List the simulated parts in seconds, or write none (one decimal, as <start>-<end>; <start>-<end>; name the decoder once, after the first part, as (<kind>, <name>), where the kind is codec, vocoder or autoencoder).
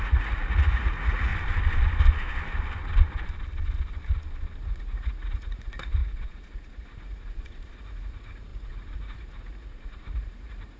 0.0-1.3 (vocoder, Vocos); 4.6-10.8